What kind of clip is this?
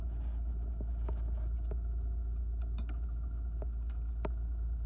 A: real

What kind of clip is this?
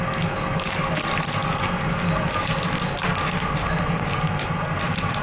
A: real